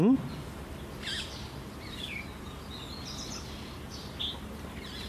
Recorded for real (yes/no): yes